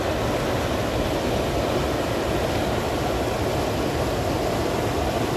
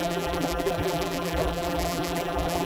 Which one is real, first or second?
first